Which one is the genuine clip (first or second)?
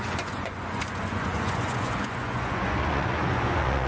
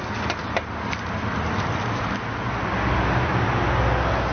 second